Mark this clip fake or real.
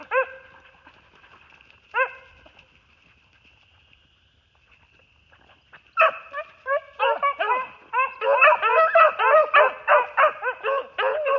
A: real